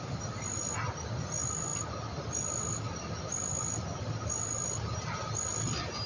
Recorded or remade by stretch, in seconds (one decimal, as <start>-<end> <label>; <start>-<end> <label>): 0.0-6.1 recorded